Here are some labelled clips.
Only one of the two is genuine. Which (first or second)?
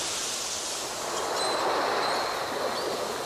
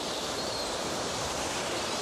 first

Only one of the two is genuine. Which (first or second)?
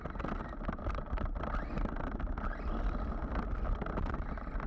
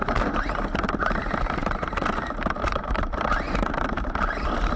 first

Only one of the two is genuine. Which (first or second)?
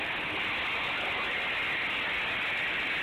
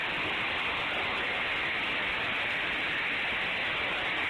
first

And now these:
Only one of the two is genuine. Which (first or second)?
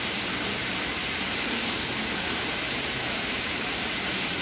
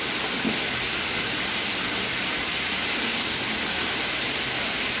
second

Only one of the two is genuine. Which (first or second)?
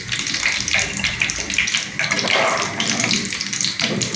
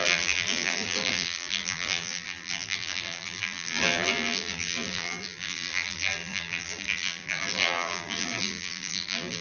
first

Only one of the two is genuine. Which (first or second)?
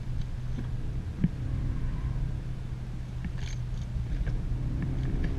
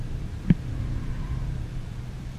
first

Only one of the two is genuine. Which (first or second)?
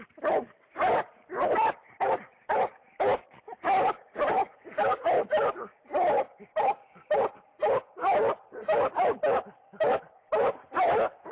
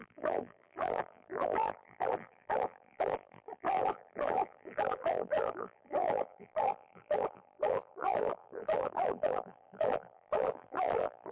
first